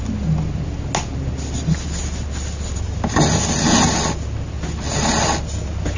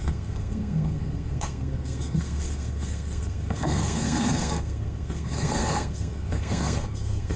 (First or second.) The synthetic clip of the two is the second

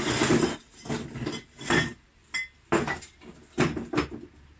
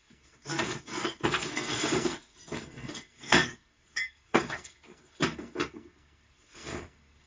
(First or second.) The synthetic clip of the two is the second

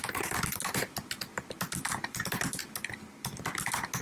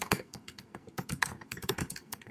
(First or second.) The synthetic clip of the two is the second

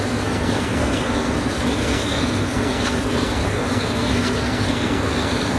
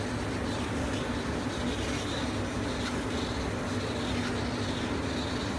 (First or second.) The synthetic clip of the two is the first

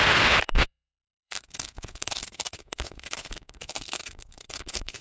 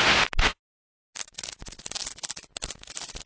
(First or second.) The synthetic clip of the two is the first